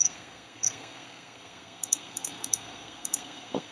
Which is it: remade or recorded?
remade